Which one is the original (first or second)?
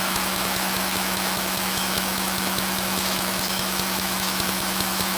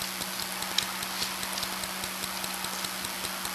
second